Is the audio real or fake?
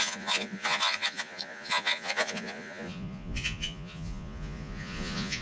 fake